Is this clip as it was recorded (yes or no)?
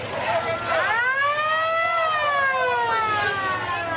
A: yes